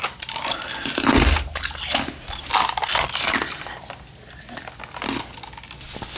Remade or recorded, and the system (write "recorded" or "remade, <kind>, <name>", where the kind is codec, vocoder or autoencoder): recorded